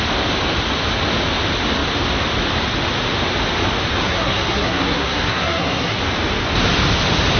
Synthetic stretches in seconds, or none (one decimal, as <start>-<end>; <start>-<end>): 4.0-6.0